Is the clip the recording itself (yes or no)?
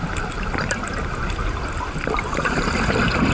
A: yes